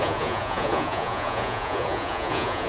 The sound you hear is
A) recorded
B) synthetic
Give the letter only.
B